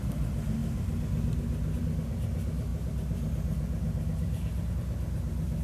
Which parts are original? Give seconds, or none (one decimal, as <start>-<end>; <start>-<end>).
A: 0.0-5.6